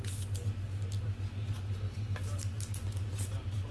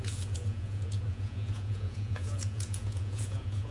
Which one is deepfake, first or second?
second